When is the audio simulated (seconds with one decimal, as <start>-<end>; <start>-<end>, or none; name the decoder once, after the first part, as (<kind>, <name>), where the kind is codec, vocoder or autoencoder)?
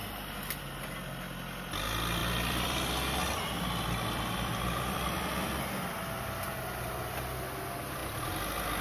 2.2-5.6 (vocoder, BigVGAN v2)